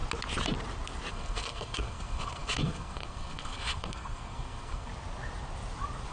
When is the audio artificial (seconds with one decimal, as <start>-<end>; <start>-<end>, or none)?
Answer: 1.1-4.9